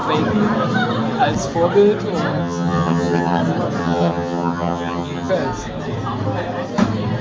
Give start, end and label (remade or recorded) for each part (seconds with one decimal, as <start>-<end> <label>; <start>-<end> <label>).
0.0-2.4 recorded; 2.4-3.4 remade; 3.4-3.8 recorded; 3.8-5.3 remade; 5.3-7.2 recorded